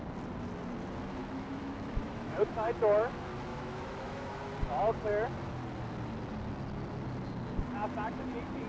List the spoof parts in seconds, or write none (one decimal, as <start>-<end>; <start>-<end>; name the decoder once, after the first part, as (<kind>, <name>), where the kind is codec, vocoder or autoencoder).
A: 1.2-2.7 (autoencoder, DAC-VAE); 3.5-4.4